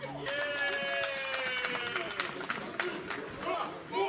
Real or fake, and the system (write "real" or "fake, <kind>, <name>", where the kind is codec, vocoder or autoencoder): real